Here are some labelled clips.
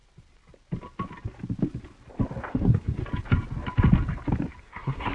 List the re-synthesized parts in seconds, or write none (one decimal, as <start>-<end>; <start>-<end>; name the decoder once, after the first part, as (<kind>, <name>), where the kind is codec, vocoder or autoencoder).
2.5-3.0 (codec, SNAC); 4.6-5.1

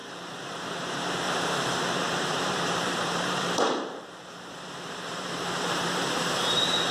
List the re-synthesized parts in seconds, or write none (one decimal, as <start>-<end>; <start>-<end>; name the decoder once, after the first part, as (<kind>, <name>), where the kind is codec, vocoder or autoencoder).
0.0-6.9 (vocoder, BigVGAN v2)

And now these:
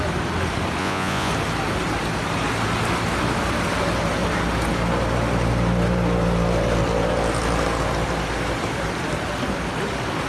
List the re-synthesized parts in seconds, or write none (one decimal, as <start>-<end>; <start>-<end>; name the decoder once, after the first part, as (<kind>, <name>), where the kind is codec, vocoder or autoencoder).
0.8-1.3 (vocoder, Vocos)

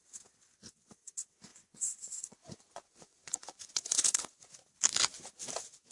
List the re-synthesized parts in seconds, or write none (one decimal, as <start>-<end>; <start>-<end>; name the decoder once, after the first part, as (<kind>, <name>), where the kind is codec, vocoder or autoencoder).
1.5-4.5 (vocoder, Vocos)

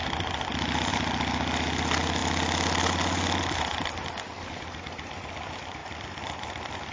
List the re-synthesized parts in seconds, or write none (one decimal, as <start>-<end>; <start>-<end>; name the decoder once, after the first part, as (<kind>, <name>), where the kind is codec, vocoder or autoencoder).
none